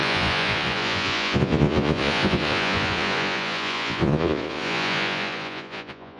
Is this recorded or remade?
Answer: remade